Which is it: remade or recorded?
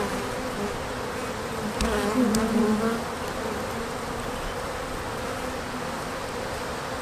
recorded